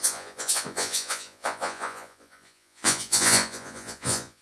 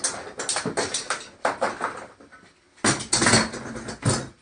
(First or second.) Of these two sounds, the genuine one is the second